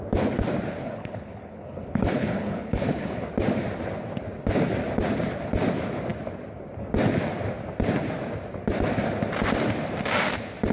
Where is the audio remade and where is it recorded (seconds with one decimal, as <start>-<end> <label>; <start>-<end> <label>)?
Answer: 0.0-0.8 recorded; 0.8-3.2 remade; 3.2-10.7 recorded